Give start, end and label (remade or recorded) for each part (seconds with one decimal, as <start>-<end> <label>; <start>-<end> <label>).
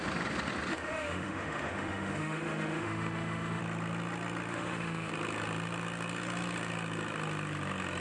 0.0-0.7 recorded; 0.7-3.6 remade; 3.6-4.5 recorded; 4.5-5.1 remade; 5.1-8.0 recorded